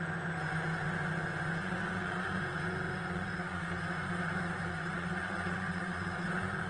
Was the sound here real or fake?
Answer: fake